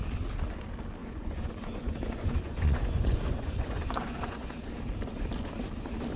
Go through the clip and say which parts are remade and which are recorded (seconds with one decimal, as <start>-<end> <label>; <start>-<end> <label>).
0.0-1.0 recorded; 1.0-4.7 remade; 4.7-6.2 recorded